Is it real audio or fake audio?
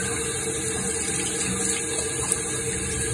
real